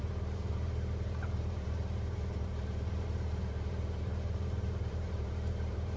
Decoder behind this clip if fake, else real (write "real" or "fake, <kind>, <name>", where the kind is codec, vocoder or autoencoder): fake, vocoder, BigVGAN v2